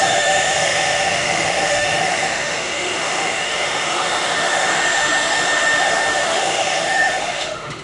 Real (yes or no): no